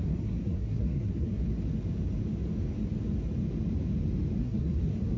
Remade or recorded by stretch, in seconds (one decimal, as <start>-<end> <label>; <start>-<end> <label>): 0.0-1.4 remade; 1.4-4.4 recorded; 4.4-5.2 remade